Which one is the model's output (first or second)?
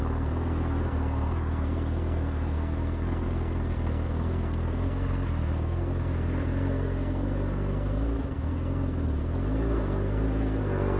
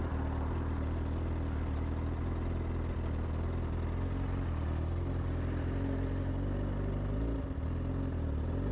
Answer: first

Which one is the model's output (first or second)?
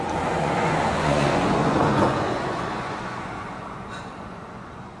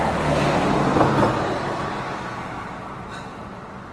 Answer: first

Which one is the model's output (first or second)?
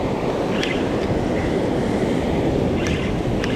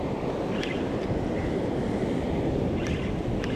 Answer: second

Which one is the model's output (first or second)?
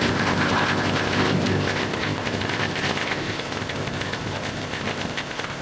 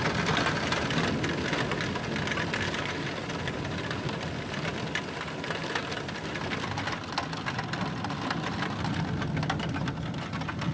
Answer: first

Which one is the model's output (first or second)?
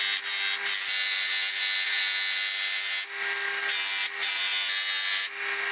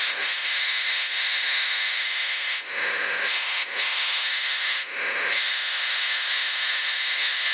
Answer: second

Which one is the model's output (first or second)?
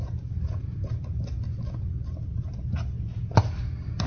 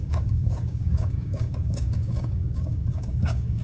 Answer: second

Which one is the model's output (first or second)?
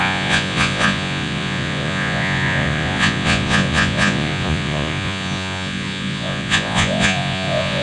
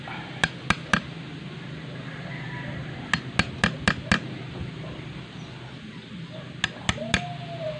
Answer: first